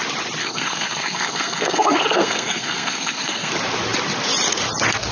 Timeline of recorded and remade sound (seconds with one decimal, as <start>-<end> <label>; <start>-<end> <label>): 0.0-0.4 recorded; 0.4-3.5 remade; 3.5-5.1 recorded